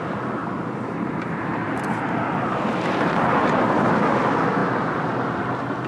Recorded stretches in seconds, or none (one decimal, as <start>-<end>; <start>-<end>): 0.0-0.4; 3.9-5.9